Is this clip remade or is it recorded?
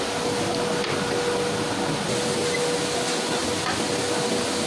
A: recorded